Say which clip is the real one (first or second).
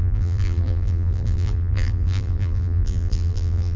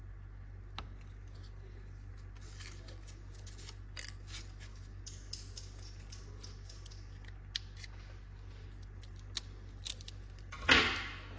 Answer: second